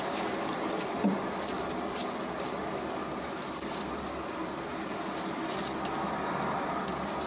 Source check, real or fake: real